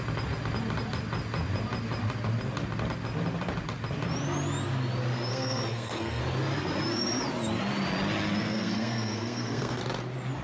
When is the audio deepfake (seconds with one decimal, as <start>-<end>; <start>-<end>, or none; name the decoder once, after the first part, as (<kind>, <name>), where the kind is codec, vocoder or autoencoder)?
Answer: 5.3-6.2 (codec, SNAC); 8.4-9.8